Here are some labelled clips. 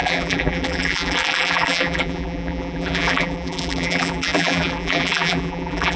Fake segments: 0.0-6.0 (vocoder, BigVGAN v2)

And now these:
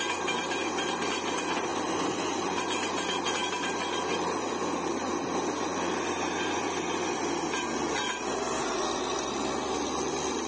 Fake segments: 1.7-2.6 (vocoder, BigVGAN v2); 3.4-5.1; 5.7-7.3

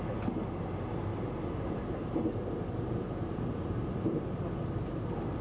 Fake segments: 1.1-4.3 (vocoder, BigVGAN v2)

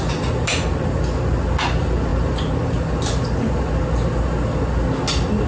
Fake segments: none

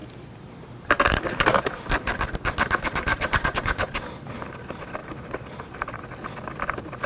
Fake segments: 0.0-1.2 (vocoder, BigVGAN v2); 3.1-4.1; 5.0-6.0

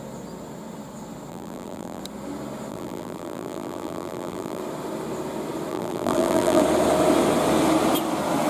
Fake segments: 1.3-2.0 (vocoder, BigVGAN v2); 2.7-4.6; 5.7-6.6